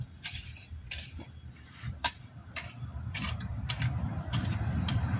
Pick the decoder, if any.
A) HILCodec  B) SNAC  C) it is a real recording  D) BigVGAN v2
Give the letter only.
D